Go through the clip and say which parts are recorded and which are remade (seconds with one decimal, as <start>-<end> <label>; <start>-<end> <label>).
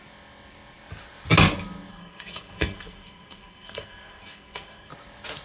0.0-1.9 recorded; 1.9-4.9 remade; 4.9-5.4 recorded